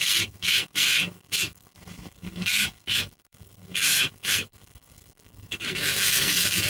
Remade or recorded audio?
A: remade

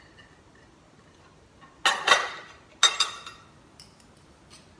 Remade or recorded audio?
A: recorded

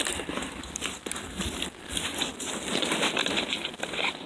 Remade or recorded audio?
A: recorded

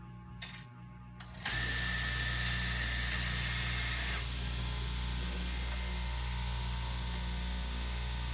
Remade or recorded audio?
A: recorded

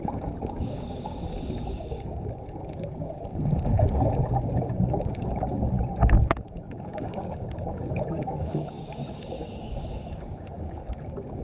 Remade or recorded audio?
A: remade